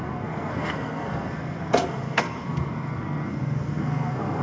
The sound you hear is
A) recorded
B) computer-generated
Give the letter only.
B